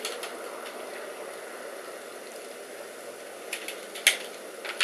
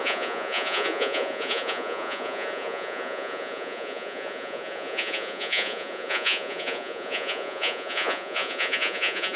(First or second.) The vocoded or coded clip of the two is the second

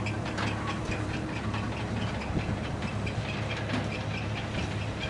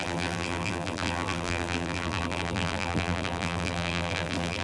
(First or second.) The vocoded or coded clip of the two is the second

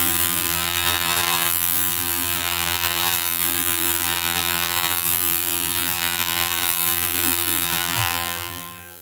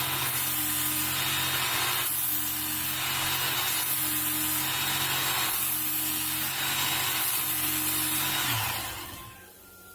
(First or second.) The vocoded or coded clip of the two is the first